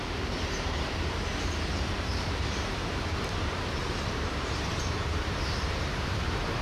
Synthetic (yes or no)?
yes